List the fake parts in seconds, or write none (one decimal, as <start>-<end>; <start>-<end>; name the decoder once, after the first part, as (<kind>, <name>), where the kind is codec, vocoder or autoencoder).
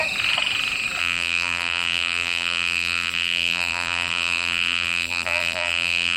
1.0-6.2 (vocoder, BigVGAN v2)